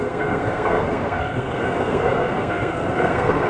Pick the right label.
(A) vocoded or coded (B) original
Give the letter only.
A